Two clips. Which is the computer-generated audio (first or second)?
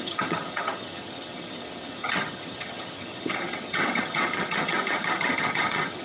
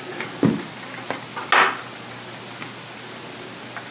first